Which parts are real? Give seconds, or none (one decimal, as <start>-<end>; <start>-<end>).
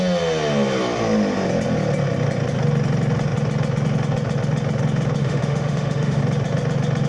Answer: 0.0-5.2; 6.2-7.1